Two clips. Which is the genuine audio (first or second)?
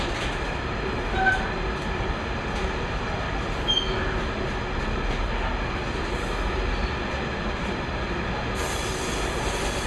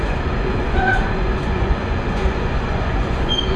first